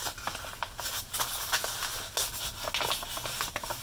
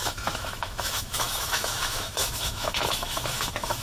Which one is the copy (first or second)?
second